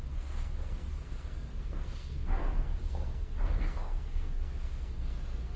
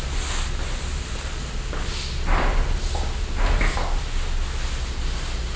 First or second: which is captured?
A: second